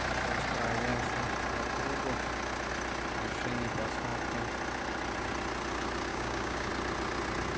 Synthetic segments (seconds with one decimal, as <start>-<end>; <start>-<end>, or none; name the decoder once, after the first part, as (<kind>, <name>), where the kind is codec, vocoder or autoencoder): 6.1-6.7 (codec, DAC)